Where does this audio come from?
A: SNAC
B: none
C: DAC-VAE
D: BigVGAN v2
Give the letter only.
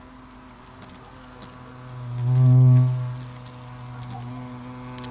B